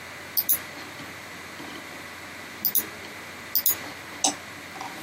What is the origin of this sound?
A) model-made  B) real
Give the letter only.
B